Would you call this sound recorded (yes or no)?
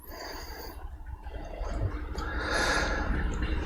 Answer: no